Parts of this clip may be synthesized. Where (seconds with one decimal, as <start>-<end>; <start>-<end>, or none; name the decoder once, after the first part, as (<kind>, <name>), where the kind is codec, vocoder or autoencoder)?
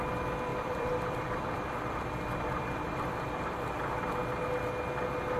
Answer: 0.5-3.7 (vocoder, BigVGAN v2)